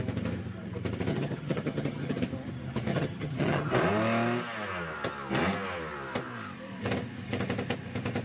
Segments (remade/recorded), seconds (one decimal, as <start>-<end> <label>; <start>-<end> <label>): 0.0-1.1 recorded; 1.1-2.2 remade; 2.2-2.9 recorded; 2.9-3.7 remade; 3.7-8.2 recorded